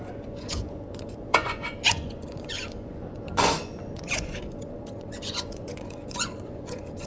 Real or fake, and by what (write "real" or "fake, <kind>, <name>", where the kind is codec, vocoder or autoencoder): fake, vocoder, Vocos